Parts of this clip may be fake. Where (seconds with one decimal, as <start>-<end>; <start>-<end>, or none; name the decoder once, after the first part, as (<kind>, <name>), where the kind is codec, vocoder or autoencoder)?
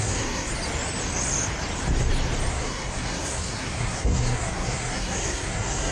0.0-0.5 (codec, SNAC); 2.5-5.9